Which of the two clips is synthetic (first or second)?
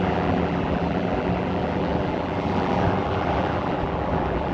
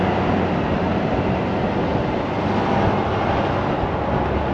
first